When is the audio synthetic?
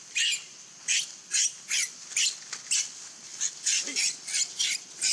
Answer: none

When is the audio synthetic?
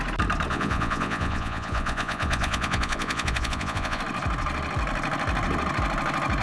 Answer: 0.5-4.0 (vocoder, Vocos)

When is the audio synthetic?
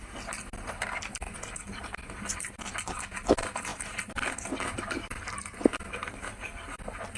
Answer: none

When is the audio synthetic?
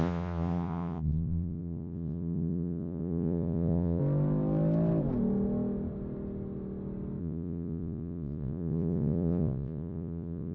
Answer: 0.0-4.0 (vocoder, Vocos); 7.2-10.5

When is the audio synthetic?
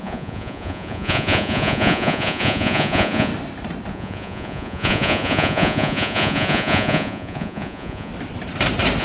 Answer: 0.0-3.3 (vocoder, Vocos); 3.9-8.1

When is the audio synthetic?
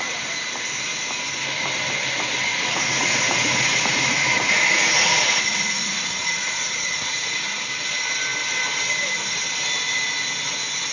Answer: 2.5-7.6 (vocoder, Vocos)